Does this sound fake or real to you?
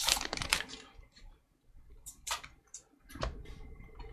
fake